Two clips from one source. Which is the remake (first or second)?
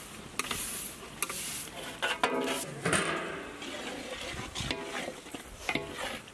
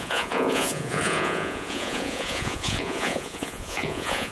second